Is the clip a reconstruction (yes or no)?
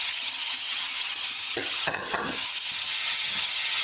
yes